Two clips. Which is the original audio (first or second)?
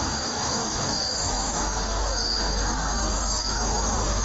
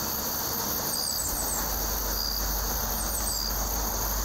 second